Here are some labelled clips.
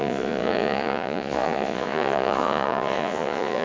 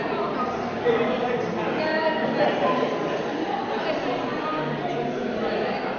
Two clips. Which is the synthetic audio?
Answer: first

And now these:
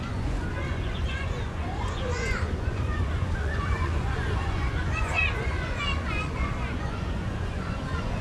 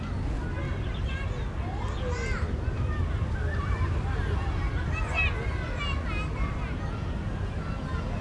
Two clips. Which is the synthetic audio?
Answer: first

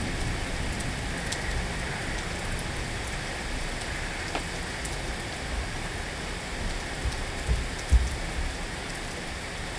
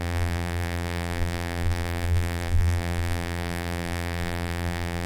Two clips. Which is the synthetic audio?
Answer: second